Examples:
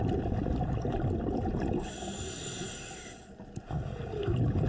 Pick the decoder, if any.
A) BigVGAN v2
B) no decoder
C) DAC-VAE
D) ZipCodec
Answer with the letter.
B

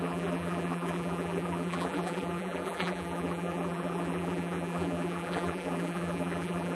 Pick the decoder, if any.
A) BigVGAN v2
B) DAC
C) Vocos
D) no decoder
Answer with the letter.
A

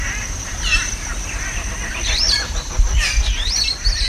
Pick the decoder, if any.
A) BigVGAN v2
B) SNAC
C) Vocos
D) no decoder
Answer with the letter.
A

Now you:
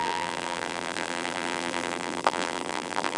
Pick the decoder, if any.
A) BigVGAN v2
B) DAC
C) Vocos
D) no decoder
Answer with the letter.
A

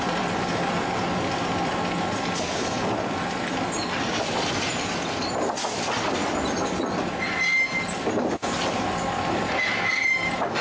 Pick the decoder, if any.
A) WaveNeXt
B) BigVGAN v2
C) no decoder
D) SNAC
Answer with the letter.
C